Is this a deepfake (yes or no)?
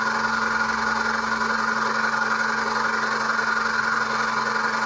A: no